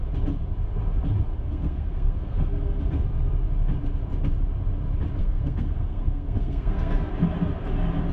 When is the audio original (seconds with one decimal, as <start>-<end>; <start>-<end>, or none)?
0.0-1.3; 2.8-5.2; 7.1-8.1